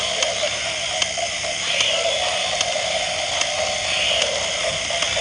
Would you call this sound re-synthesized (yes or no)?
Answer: no